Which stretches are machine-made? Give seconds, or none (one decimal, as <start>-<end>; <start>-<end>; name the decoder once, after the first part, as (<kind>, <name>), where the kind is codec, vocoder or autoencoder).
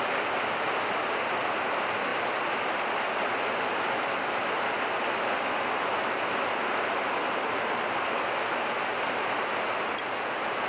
none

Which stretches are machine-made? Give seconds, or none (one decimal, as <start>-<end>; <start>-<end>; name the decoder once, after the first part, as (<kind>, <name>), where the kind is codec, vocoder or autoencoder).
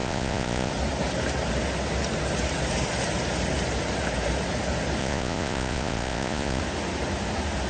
0.0-0.7 (vocoder, Vocos); 5.0-6.6